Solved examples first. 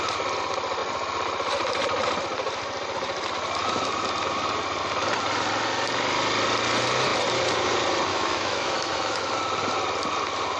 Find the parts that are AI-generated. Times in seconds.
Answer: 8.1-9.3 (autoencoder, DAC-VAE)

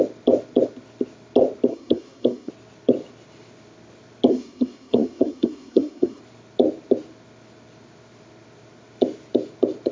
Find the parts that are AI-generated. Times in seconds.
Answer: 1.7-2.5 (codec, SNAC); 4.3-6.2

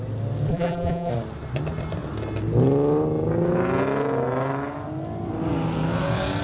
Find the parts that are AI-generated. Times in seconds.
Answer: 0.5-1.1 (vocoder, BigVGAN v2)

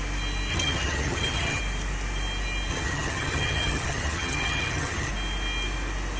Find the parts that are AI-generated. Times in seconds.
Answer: 0.5-1.6 (vocoder, HiFi-GAN); 2.7-5.1

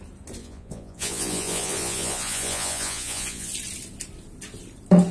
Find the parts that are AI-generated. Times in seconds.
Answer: 0.4-3.5 (vocoder, Vocos)